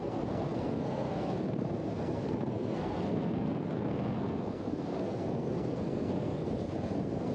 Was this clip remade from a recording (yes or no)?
yes